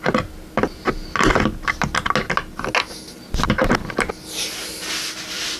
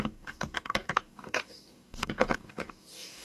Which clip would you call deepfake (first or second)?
second